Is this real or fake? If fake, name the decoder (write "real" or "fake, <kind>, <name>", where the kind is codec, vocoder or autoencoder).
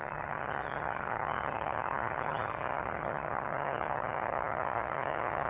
fake, vocoder, HiFi-GAN